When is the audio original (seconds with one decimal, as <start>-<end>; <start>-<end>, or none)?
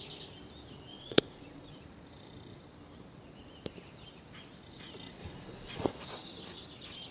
0.0-0.9; 1.8-5.2; 5.9-7.1